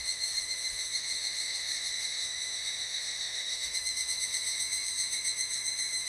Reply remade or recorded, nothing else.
remade